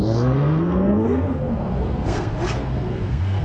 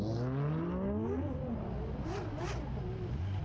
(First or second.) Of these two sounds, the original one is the second